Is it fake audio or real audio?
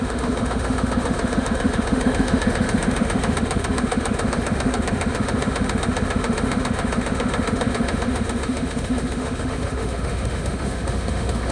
fake